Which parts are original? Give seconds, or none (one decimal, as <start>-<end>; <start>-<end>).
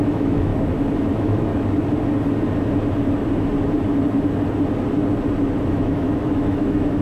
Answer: 0.5-1.1; 1.5-5.7